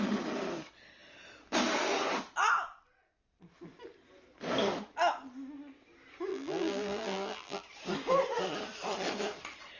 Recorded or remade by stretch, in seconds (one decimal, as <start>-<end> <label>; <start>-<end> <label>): 0.0-6.3 recorded; 6.3-7.6 remade; 7.6-9.8 recorded